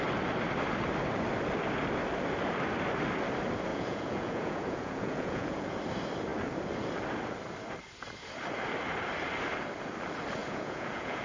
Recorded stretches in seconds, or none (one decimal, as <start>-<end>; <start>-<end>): 0.0-3.7; 5.8-10.4